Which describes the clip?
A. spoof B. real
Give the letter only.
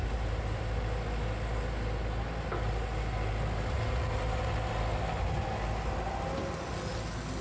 B